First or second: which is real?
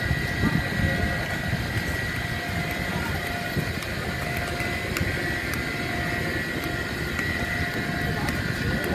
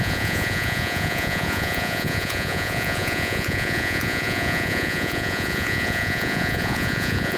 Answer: first